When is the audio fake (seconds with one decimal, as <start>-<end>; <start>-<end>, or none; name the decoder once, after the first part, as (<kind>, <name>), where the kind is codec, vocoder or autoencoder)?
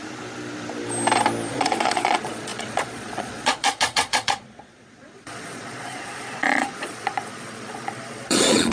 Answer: 1.5-8.7 (vocoder, Vocos)